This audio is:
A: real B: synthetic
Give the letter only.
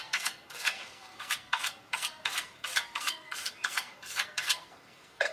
B